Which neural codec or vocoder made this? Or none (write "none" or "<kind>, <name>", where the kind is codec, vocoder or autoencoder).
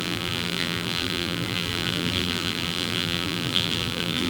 vocoder, BigVGAN v2